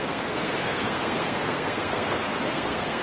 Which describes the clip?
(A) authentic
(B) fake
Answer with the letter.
B